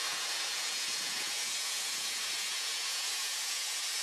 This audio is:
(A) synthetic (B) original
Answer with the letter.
A